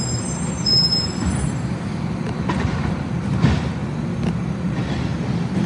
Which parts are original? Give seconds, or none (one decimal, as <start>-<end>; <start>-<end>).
3.8-4.5; 5.1-5.7